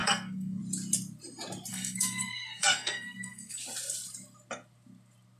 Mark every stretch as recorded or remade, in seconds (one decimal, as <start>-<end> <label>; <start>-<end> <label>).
0.0-0.6 remade; 0.6-1.7 recorded; 1.7-3.6 remade; 3.6-5.4 recorded